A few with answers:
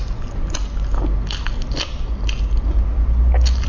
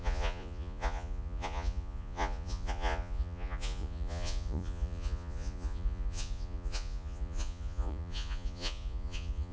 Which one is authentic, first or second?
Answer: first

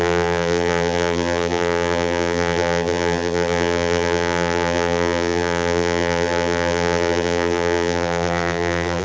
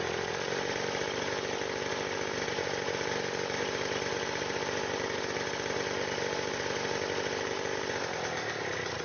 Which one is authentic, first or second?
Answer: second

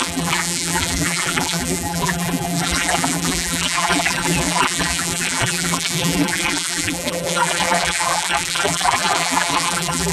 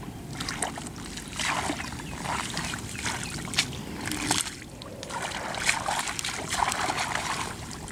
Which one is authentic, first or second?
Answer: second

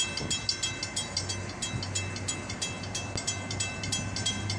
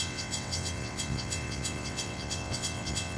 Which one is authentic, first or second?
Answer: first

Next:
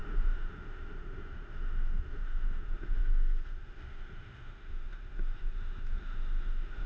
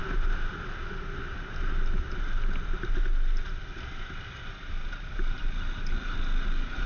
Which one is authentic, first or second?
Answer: second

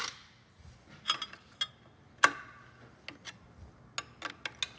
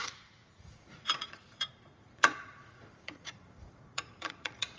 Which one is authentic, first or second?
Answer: first